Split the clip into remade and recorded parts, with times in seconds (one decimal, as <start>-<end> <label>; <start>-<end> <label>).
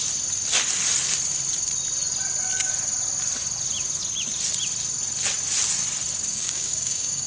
0.0-6.3 recorded; 6.3-7.3 remade